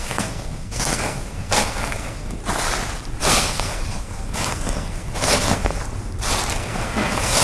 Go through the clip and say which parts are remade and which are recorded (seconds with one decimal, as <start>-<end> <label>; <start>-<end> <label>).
0.0-2.4 remade; 2.4-3.2 recorded; 3.2-5.8 remade; 5.8-6.5 recorded; 6.5-7.4 remade